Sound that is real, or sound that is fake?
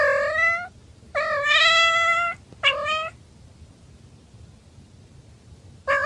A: real